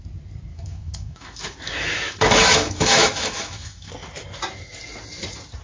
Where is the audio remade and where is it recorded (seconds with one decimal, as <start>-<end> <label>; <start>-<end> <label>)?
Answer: 0.0-0.5 recorded; 0.5-3.9 remade; 3.9-5.6 recorded